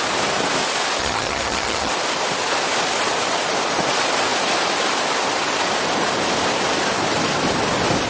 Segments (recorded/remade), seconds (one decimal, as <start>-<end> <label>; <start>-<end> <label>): 0.0-1.0 recorded; 1.0-1.9 remade; 1.9-8.1 recorded